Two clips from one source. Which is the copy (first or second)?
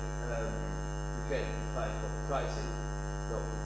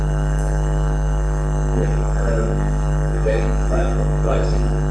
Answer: second